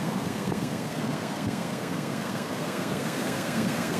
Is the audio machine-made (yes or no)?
yes